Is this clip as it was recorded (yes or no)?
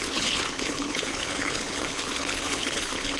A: no